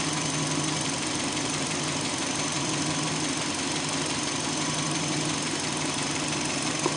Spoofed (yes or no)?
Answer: yes